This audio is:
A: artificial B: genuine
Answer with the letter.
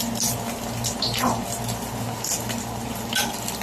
B